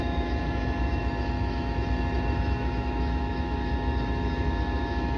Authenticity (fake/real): fake